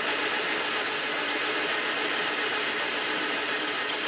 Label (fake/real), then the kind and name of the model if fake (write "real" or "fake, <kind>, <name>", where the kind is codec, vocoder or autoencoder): real